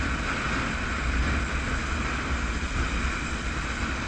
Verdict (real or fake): real